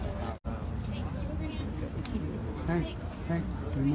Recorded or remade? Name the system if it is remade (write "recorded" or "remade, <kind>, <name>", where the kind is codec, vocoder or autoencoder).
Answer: recorded